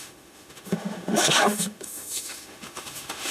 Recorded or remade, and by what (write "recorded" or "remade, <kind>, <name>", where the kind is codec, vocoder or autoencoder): remade, autoencoder, DAC-VAE